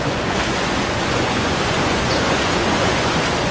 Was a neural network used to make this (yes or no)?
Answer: yes